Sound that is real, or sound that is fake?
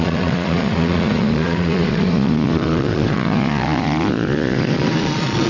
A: fake